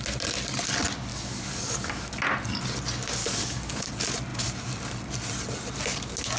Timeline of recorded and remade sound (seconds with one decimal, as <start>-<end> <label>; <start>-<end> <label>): 0.0-1.1 recorded; 1.1-2.1 remade; 2.1-3.2 recorded; 3.2-3.9 remade; 3.9-6.4 recorded